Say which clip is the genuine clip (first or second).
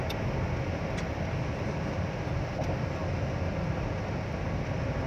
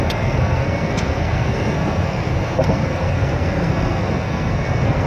first